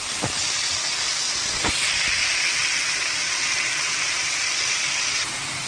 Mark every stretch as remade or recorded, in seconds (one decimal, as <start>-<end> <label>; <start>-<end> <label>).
0.0-5.7 recorded